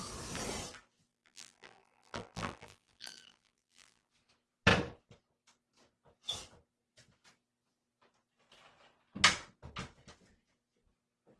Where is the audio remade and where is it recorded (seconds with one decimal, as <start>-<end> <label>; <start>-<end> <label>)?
0.0-1.1 recorded; 1.1-4.1 remade; 4.1-11.4 recorded